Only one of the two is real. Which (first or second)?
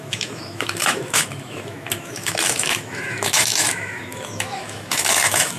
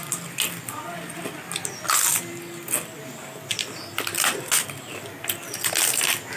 second